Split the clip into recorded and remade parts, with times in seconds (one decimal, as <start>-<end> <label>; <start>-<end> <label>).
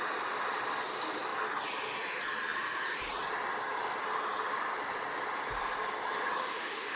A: 0.0-6.4 recorded; 6.4-7.0 remade